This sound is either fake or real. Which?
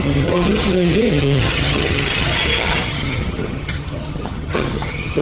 fake